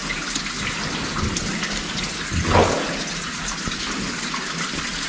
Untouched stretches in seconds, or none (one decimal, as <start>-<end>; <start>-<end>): 0.0-5.1